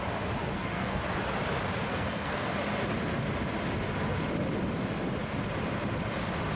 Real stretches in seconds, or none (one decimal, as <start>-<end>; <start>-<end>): 0.0-0.4; 1.0-1.9; 2.5-6.6